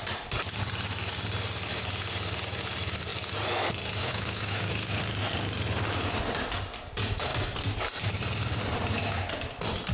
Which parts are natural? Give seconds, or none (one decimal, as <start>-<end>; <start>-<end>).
0.0-4.0; 5.0-9.9